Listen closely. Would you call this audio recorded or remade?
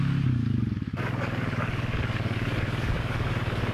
remade